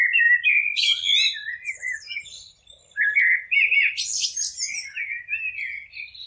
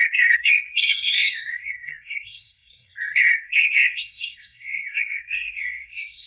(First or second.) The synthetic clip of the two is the second